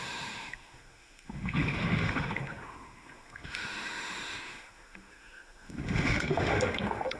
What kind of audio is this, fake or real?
fake